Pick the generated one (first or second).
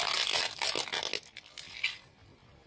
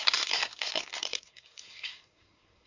second